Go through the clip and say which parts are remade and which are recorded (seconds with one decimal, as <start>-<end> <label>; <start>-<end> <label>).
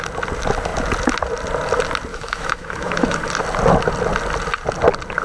0.0-2.1 recorded; 2.1-3.2 remade; 3.2-5.2 recorded